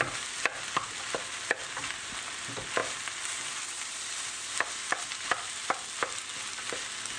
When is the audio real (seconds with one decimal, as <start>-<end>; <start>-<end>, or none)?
0.0-7.2